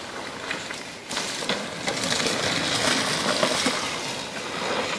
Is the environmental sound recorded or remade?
recorded